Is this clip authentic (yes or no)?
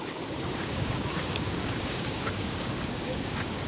no